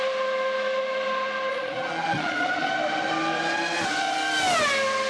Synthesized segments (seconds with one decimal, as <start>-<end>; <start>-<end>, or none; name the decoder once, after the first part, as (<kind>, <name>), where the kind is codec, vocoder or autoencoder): 1.5-2.7 (vocoder, Vocos)